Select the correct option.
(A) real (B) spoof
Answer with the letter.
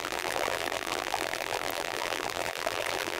B